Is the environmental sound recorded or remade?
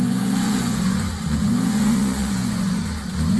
remade